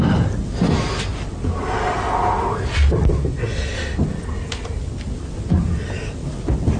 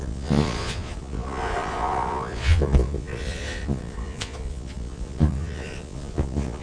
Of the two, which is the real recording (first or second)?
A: first